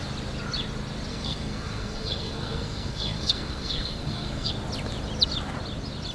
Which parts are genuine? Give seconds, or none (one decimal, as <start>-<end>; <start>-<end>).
0.0-1.1; 4.5-6.1